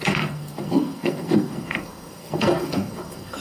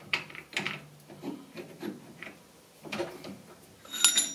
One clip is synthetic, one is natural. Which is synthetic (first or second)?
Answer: first